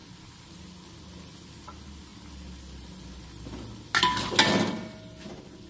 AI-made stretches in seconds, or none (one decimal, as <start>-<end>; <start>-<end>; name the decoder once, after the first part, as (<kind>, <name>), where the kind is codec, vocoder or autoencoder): none